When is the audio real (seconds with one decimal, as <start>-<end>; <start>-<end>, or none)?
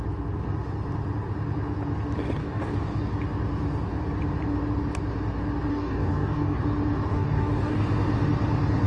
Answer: 0.0-2.4; 3.0-5.7; 6.6-7.1; 7.8-8.9